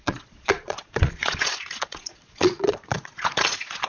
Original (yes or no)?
no